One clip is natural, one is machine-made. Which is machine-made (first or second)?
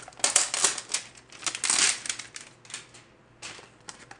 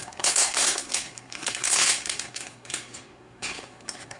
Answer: second